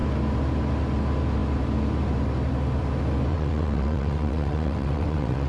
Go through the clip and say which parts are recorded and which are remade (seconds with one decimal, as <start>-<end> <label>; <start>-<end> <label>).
0.0-3.3 recorded; 3.3-5.5 remade